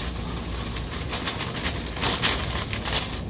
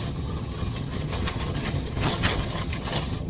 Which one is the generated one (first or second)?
second